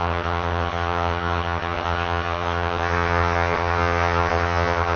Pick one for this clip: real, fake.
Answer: fake